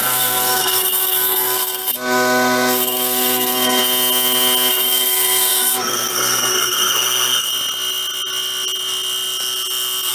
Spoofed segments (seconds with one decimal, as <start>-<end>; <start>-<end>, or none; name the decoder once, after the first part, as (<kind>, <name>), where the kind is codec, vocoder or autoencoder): 0.0-3.8 (codec, SNAC); 4.7-7.5